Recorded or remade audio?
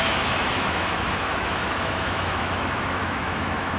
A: remade